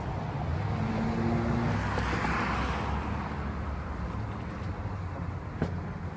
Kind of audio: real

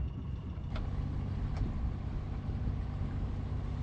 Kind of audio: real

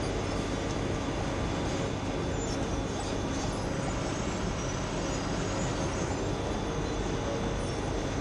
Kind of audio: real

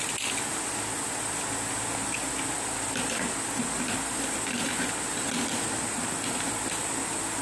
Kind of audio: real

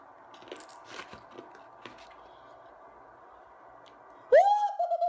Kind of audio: real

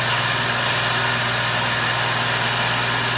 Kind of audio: real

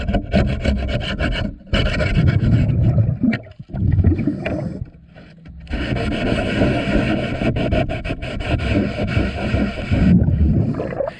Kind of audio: real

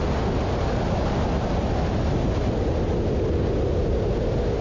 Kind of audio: real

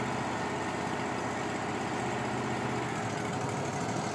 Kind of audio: real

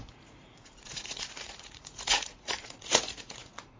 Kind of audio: fake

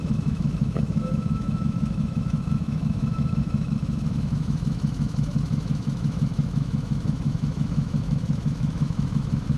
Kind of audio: fake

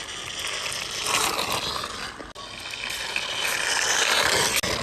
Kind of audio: real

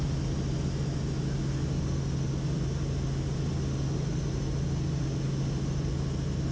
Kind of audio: real